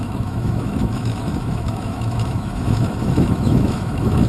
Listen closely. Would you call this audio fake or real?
fake